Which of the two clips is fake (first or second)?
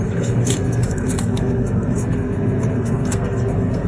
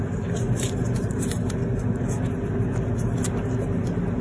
first